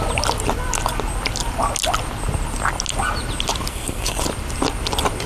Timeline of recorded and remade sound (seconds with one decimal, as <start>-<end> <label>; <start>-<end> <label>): 0.0-3.7 recorded; 3.7-4.2 remade; 4.2-5.3 recorded